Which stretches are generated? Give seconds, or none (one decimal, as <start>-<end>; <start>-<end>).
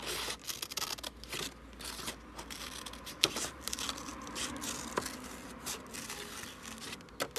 none